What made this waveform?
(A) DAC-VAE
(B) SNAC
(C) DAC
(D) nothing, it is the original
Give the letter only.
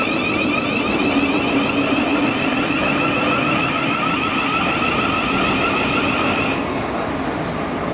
D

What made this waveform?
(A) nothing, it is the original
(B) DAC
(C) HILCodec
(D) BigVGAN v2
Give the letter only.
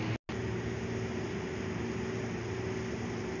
A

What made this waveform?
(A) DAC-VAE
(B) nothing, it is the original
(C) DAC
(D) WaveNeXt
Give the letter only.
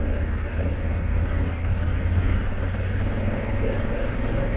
C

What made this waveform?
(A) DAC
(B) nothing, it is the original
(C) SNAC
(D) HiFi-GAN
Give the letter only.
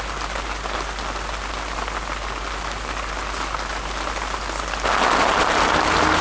B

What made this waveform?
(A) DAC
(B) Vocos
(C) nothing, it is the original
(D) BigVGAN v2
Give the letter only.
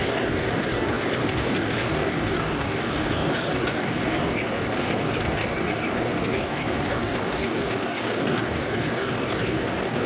A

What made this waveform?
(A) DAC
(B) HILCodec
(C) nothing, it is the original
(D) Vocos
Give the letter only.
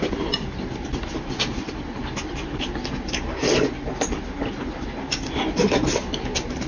C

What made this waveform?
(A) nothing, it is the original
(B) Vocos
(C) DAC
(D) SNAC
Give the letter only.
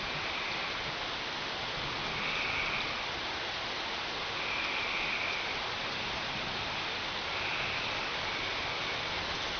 A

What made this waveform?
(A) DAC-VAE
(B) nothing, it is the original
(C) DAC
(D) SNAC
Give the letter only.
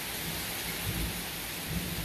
B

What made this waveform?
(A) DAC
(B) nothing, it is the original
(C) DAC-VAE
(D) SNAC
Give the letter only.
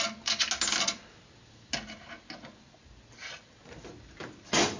B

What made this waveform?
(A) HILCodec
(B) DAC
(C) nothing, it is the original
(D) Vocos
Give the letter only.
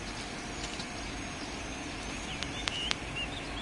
C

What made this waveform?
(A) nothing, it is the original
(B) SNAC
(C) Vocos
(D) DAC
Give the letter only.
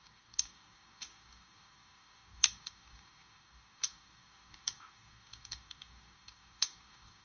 D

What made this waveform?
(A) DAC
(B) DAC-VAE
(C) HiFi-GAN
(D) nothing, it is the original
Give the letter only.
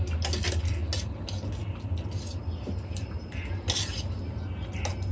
D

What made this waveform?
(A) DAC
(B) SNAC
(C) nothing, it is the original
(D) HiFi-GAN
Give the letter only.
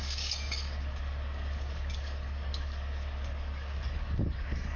A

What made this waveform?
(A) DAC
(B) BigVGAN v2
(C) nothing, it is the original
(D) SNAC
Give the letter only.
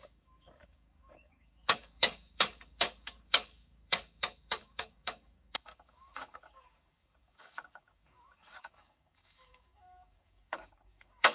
A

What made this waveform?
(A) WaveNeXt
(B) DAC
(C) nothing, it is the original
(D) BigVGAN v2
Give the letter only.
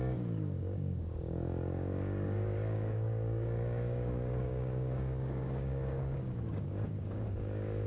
B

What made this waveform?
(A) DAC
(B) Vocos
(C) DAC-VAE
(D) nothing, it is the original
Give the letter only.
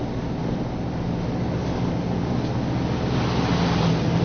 D